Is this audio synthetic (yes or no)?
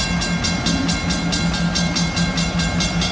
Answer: no